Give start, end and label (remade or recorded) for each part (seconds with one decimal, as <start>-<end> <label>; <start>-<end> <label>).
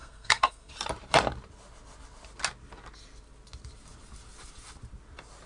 0.0-0.7 remade; 0.7-5.5 recorded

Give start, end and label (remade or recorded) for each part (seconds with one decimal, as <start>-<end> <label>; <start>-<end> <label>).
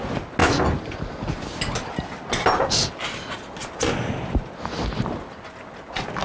0.0-6.2 recorded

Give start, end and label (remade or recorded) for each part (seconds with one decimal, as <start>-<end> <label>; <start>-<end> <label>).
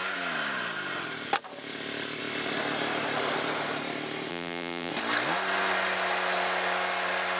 0.0-4.3 recorded; 4.3-4.9 remade; 4.9-7.4 recorded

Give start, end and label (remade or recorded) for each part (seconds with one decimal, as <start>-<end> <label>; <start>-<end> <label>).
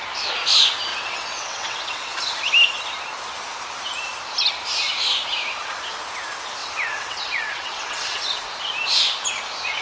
0.0-0.9 recorded; 0.9-2.2 remade; 2.2-6.6 recorded; 6.6-8.2 remade; 8.2-9.8 recorded